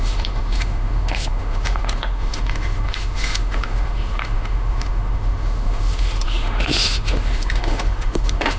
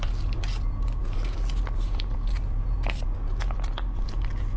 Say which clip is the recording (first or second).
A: second